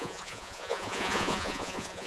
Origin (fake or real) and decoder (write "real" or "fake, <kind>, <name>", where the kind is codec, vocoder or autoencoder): fake, vocoder, Vocos